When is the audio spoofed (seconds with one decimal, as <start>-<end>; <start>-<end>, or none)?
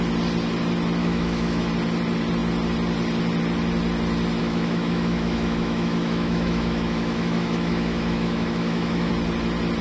1.0-1.7; 4.4-9.1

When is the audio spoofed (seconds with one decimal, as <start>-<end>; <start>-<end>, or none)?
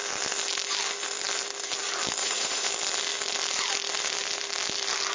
2.2-2.7